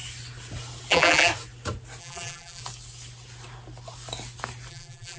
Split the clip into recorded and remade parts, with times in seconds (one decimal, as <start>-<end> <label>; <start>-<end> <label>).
0.0-0.9 recorded; 0.9-1.3 remade; 1.3-2.0 recorded; 2.0-2.6 remade; 2.6-4.7 recorded; 4.7-5.2 remade